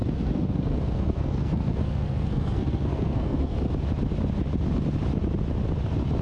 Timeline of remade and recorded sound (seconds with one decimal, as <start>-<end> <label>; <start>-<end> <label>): 0.0-3.7 remade; 3.7-6.2 recorded